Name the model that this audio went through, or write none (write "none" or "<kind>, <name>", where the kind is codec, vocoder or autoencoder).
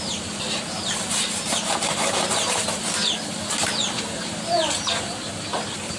vocoder, BigVGAN v2